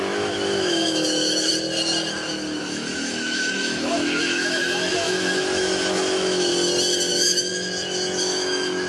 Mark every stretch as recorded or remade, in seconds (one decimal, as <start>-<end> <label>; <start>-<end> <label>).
0.0-1.5 remade; 1.5-2.6 recorded; 2.6-6.5 remade; 6.5-7.1 recorded; 7.1-8.9 remade